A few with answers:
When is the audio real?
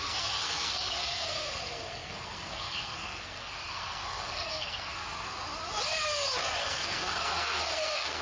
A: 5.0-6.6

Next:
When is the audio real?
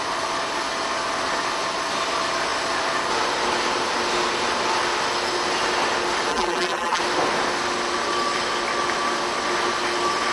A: 0.0-6.3; 7.0-10.3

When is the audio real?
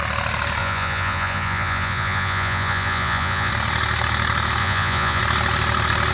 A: 0.0-0.6; 3.5-4.6; 5.2-6.1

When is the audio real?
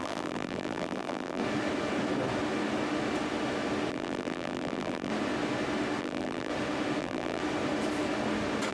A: 1.4-3.9; 5.1-6.0; 6.5-7.0; 7.4-8.7